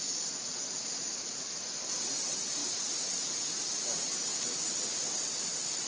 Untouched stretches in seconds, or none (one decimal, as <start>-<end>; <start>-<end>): 0.0-5.9